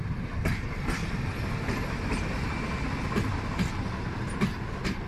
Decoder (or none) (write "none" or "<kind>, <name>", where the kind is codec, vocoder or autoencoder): none